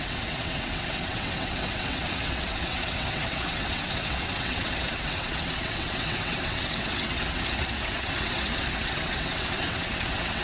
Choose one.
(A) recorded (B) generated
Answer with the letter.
B